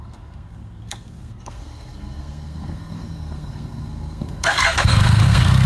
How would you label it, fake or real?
fake